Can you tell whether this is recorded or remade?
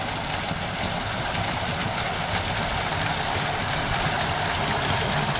recorded